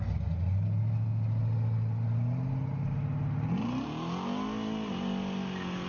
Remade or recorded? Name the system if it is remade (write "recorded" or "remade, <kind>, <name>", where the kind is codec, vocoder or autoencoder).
recorded